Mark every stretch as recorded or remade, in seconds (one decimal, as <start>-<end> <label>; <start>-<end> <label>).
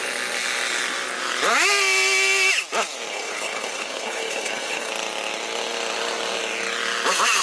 0.0-3.1 recorded; 3.1-4.9 remade; 4.9-7.4 recorded